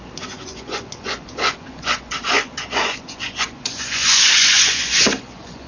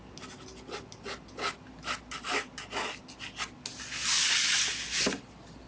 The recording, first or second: second